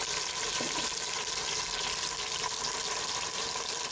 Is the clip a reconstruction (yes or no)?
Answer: no